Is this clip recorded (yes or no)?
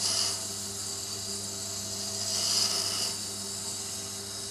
yes